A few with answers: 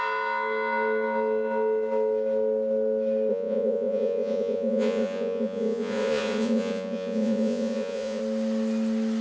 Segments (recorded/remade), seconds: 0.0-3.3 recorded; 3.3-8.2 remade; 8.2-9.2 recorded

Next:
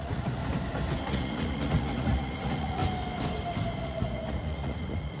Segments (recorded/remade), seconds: 0.0-0.4 remade; 0.4-1.1 recorded; 1.1-2.8 remade; 2.8-3.8 recorded; 3.8-5.2 remade

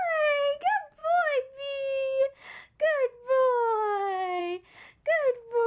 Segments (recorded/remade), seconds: 0.0-5.7 recorded

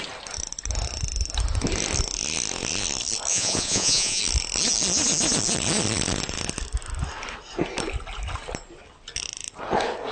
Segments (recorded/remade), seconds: 0.0-3.3 recorded; 3.3-4.2 remade; 4.2-10.1 recorded

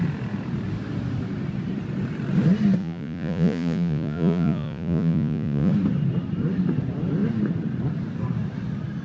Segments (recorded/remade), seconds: 0.0-2.8 recorded; 2.8-5.7 remade; 5.7-9.0 recorded